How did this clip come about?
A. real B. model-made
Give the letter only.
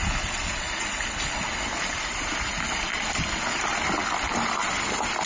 A